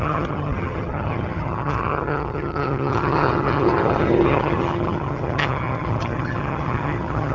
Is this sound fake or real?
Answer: fake